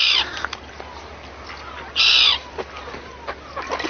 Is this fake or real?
real